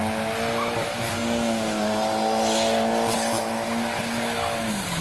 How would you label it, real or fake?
real